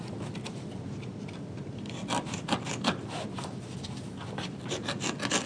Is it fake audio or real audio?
real